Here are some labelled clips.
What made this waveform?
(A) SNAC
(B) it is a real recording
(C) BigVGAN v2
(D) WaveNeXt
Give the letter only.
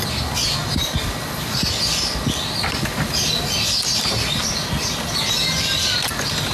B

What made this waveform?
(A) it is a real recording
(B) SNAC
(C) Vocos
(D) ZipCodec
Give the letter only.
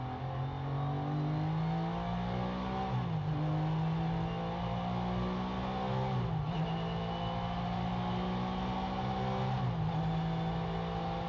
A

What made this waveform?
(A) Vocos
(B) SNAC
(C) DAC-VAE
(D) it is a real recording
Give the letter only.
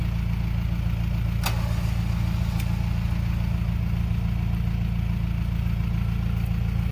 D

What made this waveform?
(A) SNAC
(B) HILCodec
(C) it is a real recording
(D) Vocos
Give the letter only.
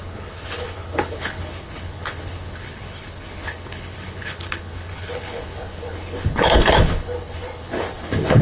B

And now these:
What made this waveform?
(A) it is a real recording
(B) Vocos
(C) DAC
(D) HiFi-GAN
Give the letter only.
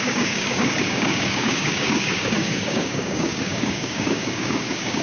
C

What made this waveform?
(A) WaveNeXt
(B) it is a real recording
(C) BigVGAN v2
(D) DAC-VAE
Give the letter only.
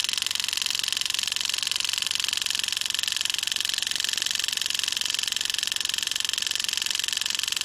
B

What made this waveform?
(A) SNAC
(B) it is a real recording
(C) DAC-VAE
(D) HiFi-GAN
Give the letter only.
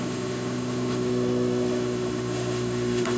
C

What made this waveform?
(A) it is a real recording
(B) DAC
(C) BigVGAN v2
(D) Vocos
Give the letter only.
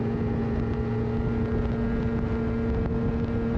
A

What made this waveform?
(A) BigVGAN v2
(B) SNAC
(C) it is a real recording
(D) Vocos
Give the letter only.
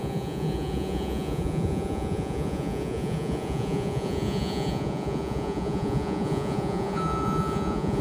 D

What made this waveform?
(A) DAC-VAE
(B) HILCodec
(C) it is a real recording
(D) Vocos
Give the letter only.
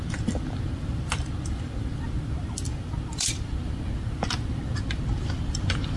C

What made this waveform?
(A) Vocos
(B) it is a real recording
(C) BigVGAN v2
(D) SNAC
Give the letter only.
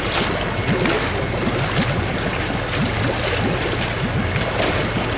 B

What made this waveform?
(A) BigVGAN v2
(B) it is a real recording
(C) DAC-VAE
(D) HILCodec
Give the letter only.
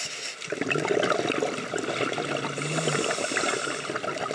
B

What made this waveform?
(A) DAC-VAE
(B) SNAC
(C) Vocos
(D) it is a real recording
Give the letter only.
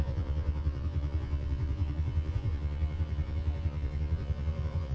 C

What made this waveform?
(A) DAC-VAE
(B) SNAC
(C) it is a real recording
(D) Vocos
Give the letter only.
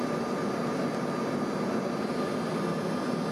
C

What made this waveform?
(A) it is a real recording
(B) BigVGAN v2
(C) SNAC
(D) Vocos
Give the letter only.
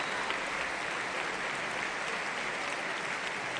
A